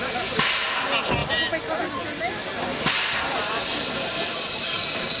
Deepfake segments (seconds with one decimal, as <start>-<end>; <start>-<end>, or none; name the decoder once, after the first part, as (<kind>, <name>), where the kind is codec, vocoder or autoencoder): none